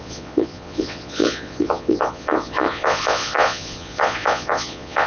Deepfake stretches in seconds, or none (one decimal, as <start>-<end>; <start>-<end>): 0.0-5.1